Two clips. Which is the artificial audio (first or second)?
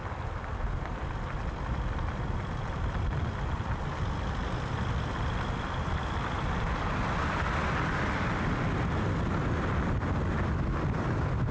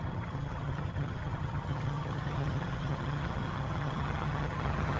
second